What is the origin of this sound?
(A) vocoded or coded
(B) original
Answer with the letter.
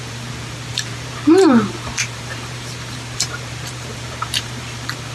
A